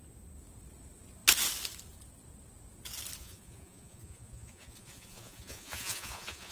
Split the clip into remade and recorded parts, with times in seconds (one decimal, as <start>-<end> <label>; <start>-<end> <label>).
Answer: 0.0-3.2 recorded; 3.2-6.5 remade